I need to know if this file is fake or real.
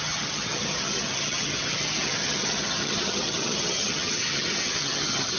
fake